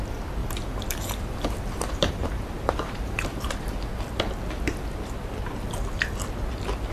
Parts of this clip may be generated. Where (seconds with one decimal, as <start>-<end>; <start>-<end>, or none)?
0.4-3.9